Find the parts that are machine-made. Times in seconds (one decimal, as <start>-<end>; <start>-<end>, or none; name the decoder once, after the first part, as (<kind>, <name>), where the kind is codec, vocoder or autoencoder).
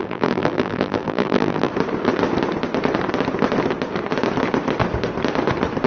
0.0-1.7 (vocoder, BigVGAN v2)